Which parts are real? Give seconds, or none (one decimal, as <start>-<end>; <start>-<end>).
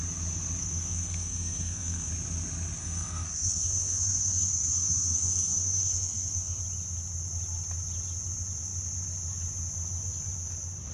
0.0-0.6; 2.1-2.8; 6.6-10.9